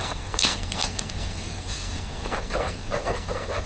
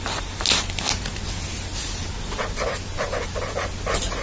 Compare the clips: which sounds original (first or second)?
second